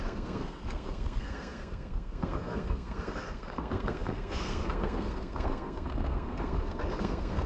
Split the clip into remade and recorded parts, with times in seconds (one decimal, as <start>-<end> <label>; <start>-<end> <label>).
0.0-7.5 remade